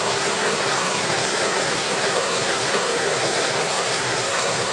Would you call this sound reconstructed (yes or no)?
yes